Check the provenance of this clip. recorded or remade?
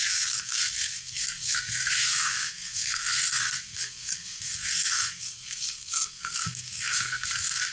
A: remade